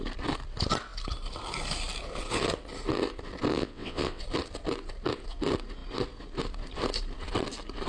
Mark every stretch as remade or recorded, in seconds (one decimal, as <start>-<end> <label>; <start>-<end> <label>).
0.0-3.5 recorded; 3.5-4.2 remade; 4.2-7.9 recorded